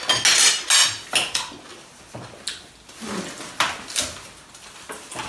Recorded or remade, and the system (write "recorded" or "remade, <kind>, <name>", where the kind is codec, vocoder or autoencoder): recorded